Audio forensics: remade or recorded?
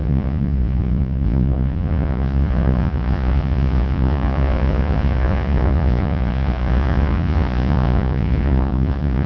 remade